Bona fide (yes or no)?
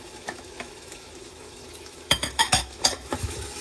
no